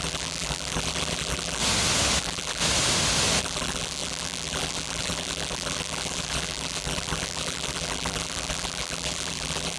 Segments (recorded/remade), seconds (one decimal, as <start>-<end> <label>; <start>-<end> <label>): 0.0-1.6 remade; 1.6-2.2 recorded; 2.2-2.6 remade; 2.6-3.4 recorded; 3.4-9.8 remade